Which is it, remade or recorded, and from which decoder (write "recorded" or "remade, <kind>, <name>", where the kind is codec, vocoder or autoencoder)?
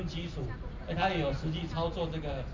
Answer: recorded